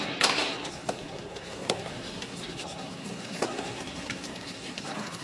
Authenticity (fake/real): fake